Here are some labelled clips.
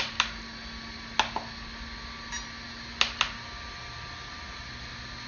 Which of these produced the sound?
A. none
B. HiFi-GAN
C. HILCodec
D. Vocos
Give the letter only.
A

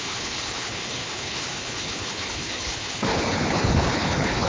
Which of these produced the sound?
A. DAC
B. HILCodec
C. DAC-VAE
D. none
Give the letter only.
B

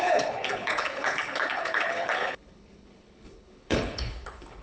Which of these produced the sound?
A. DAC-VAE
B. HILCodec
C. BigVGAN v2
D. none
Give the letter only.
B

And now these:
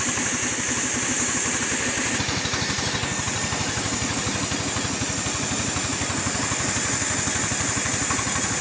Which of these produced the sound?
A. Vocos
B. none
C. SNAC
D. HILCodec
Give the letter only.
B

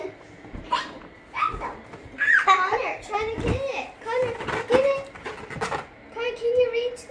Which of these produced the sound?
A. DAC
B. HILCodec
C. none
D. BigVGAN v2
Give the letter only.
C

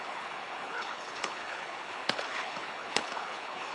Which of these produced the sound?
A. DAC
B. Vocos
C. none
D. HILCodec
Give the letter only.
D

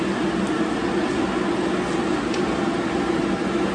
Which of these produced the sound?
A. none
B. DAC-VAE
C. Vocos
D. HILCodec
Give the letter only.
A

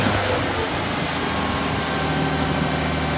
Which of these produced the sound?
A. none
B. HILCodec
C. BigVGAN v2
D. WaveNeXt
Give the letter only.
A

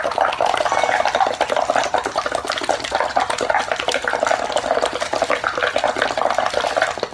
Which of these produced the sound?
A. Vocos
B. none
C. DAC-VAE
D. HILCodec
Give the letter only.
B